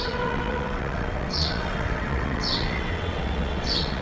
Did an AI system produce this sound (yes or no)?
yes